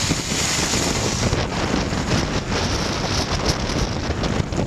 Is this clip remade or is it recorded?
recorded